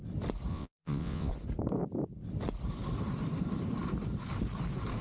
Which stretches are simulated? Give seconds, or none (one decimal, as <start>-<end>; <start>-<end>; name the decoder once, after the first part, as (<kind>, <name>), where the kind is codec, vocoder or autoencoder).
0.5-1.3 (vocoder, WaveNeXt)